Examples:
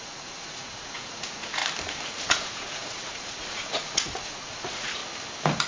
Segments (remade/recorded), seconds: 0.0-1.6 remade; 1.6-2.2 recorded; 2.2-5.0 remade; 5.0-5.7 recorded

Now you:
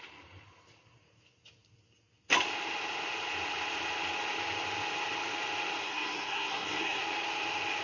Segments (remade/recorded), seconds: 0.0-5.8 recorded; 5.8-7.0 remade; 7.0-7.8 recorded

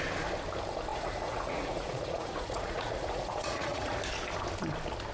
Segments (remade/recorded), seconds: 0.0-0.9 recorded; 0.9-4.0 remade; 4.0-5.1 recorded

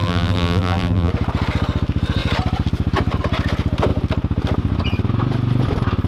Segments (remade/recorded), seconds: 0.0-1.1 remade; 1.1-6.1 recorded

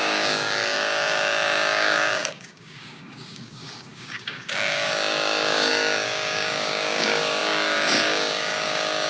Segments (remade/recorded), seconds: 0.0-9.1 remade

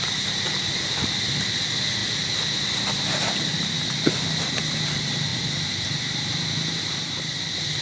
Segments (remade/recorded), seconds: 0.0-7.8 recorded

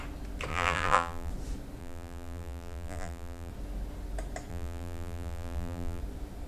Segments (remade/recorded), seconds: 0.0-0.5 recorded; 0.5-1.3 remade; 1.3-1.8 recorded; 1.8-3.5 remade; 3.5-4.5 recorded; 4.5-6.0 remade; 6.0-6.5 recorded